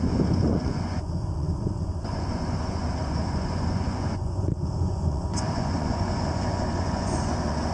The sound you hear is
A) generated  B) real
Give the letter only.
A